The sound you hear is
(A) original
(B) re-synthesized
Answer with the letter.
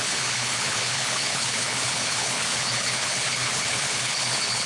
B